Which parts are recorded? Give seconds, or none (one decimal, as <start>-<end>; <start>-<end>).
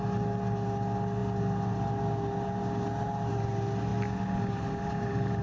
0.0-5.4